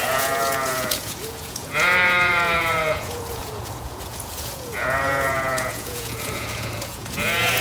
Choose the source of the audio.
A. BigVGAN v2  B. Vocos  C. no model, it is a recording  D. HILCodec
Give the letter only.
B